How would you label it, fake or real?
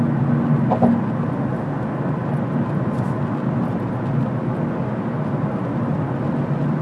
real